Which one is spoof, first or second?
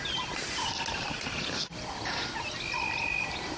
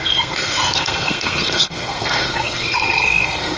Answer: second